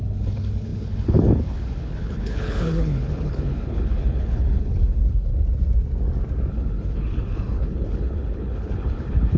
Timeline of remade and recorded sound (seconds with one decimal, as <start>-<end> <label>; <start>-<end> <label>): 0.0-5.3 remade; 5.3-6.5 recorded; 6.5-9.4 remade